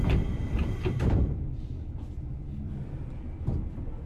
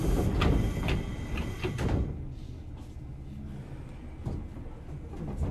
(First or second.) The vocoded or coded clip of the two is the first